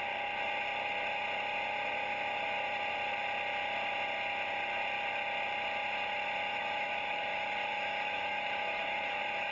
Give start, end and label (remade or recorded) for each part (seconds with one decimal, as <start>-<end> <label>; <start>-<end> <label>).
0.0-6.5 recorded; 6.5-9.5 remade